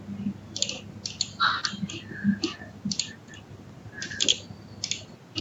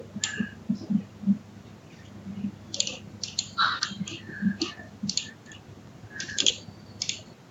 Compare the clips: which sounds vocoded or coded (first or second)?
second